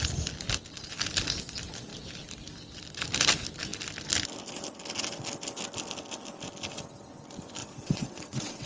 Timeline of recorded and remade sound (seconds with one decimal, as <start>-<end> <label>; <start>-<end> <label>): 0.0-7.6 recorded; 7.6-8.7 remade